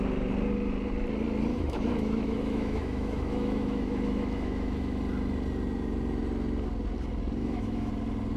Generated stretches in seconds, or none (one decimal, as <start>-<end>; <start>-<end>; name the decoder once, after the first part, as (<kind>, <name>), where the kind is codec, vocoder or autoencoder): 1.5-5.0 (autoencoder, DAC-VAE); 7.4-7.9